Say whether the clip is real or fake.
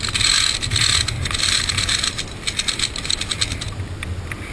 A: real